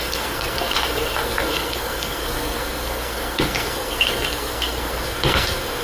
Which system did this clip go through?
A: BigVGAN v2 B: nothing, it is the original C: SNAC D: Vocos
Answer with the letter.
C